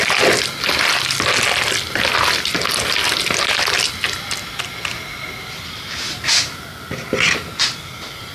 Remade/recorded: recorded